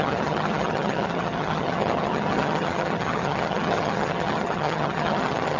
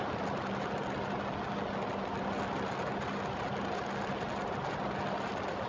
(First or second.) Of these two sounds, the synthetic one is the first